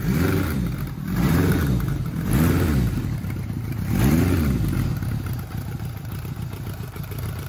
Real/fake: real